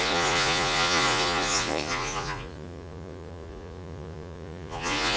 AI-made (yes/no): yes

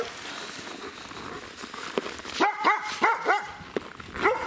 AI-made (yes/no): no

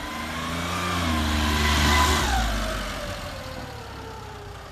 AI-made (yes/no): no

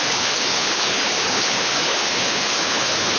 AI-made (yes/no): yes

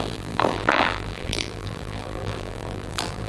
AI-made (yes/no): yes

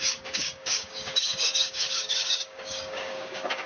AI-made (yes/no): yes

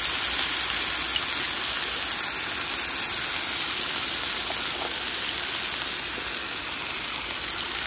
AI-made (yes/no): no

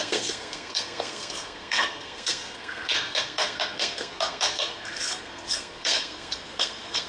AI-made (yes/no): yes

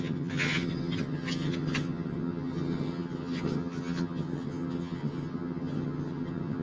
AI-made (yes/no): yes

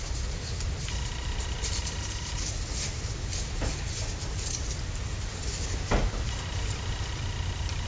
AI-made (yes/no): no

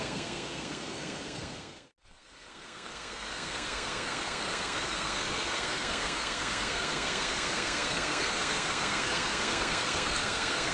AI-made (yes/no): yes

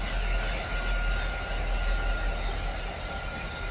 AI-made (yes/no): no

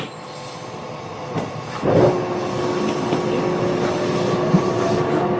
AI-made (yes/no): no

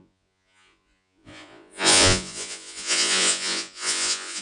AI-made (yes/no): yes